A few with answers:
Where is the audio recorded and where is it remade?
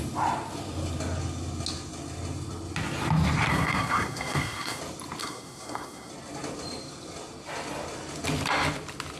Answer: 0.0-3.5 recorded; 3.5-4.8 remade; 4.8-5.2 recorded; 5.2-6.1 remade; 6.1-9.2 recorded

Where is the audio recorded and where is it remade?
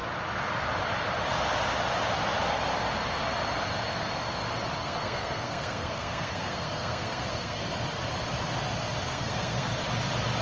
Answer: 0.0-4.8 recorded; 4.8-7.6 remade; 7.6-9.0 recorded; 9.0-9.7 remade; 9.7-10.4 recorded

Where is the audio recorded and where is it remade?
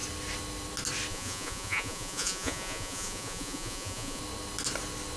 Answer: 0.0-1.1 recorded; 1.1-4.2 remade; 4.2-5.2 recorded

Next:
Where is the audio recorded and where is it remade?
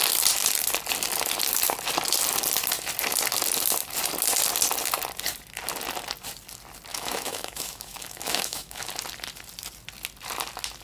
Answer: 0.0-6.9 recorded; 6.9-8.9 remade; 8.9-10.8 recorded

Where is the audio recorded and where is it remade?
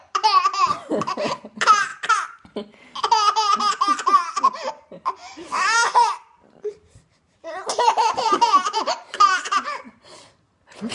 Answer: 0.0-1.9 remade; 1.9-3.7 recorded; 3.7-10.9 remade